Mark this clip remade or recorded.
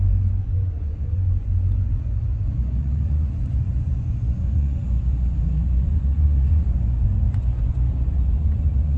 remade